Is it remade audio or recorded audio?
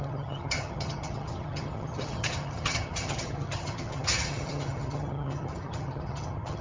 remade